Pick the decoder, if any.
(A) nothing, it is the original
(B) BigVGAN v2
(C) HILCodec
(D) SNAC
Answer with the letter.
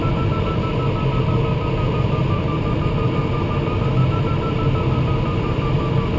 A